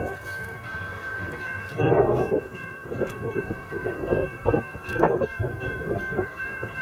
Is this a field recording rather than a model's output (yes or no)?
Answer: no